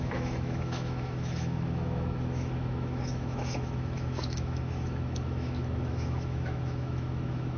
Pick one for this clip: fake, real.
fake